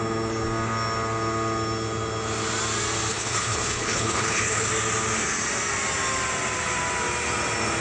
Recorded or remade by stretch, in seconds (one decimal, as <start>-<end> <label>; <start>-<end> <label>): 0.0-3.1 recorded; 3.1-4.7 remade; 4.7-7.8 recorded